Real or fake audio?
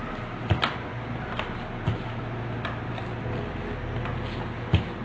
real